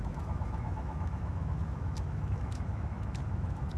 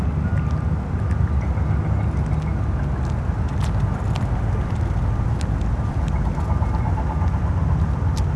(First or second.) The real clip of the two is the second